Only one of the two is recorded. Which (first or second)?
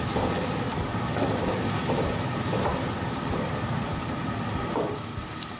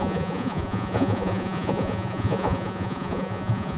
first